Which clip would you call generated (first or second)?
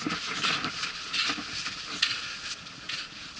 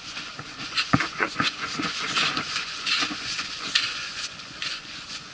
second